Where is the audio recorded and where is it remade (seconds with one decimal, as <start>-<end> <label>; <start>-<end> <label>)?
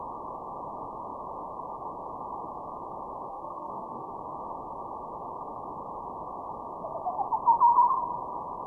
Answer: 0.0-3.3 recorded; 3.3-4.1 remade; 4.1-8.7 recorded